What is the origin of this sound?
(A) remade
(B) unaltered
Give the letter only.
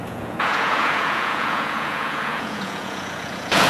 A